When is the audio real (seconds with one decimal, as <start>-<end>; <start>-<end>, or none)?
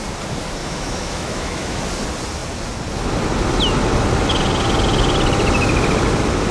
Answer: 0.0-0.6; 1.8-6.5